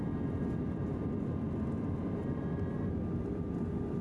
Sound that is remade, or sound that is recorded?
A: recorded